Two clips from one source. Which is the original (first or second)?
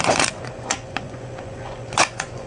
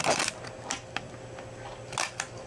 second